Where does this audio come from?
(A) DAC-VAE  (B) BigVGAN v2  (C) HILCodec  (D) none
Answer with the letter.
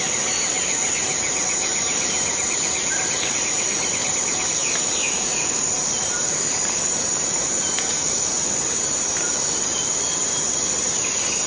D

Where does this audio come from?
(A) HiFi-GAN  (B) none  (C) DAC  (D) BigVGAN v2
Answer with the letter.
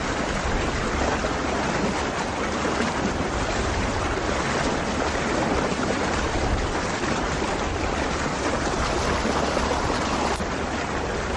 B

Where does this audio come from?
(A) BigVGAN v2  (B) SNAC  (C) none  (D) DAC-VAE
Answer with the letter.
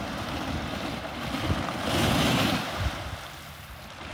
C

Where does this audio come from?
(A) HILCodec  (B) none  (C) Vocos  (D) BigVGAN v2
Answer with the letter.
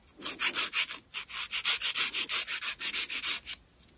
B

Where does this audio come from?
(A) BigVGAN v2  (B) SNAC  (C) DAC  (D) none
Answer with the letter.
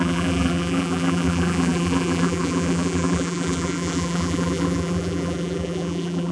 A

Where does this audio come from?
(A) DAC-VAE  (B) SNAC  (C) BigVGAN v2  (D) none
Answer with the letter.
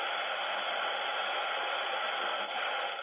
C